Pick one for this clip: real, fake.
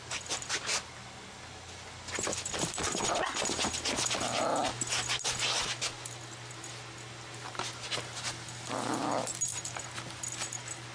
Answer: real